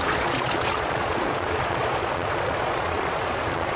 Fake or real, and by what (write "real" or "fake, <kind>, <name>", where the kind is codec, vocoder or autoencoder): fake, vocoder, Vocos